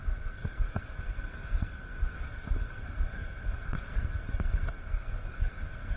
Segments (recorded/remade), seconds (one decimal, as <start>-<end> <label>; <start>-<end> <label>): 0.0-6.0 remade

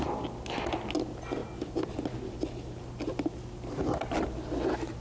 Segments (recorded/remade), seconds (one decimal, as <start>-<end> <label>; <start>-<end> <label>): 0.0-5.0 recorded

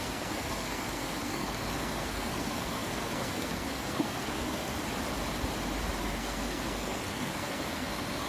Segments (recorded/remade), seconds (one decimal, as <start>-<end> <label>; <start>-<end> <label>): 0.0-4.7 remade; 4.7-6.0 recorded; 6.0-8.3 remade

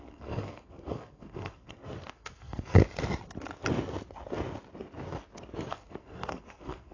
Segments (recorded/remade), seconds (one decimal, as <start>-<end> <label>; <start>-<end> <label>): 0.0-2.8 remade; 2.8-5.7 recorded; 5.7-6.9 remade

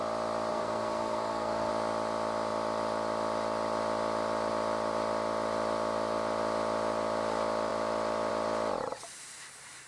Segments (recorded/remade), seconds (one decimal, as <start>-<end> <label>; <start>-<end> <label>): 0.0-0.5 recorded; 0.5-1.7 remade; 1.7-9.9 recorded